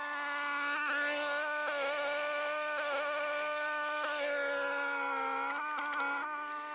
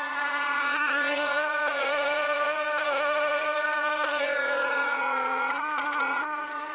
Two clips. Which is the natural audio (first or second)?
first